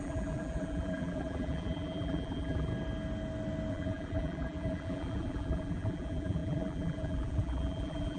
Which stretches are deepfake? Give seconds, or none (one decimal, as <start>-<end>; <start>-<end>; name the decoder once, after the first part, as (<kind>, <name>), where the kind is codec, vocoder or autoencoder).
0.0-2.7 (vocoder, BigVGAN v2); 3.7-8.2